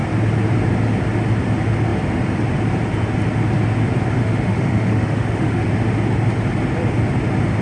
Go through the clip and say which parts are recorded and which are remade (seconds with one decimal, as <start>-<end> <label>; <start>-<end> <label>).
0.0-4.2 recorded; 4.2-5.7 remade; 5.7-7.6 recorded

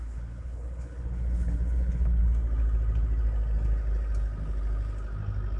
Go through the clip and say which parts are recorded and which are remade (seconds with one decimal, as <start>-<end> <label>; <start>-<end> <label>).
0.0-2.2 remade; 2.2-5.6 recorded

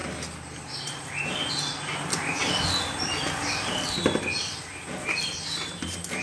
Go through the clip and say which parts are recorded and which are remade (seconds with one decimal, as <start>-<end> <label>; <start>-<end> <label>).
0.0-6.2 recorded

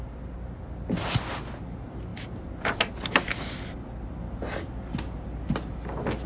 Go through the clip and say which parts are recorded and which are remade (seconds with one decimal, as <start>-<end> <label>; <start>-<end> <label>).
0.0-6.3 recorded